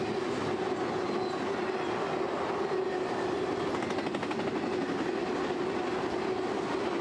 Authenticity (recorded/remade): recorded